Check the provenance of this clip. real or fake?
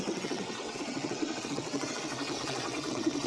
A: fake